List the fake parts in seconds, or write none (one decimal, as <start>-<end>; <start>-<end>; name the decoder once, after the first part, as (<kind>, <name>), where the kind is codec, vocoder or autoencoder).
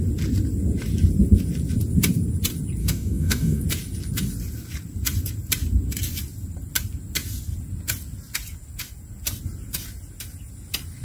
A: 2.8-3.6 (codec, DAC)